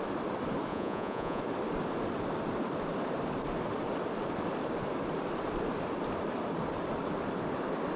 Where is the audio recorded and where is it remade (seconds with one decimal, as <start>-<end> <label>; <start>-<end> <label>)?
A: 0.0-0.7 recorded; 0.7-1.4 remade; 1.4-8.0 recorded